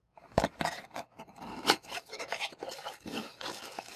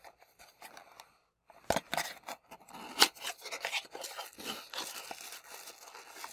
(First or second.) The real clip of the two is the second